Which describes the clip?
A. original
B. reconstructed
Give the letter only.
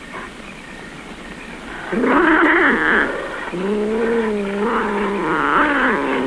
A